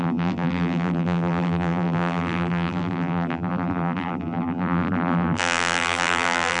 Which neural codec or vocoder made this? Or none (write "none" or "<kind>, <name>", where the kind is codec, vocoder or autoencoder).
vocoder, BigVGAN v2